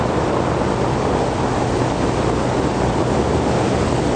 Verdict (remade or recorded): recorded